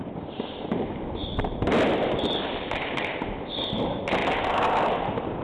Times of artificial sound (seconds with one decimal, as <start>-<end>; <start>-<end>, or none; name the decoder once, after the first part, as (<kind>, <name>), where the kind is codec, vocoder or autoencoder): none